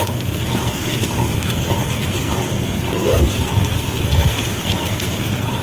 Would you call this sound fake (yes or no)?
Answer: yes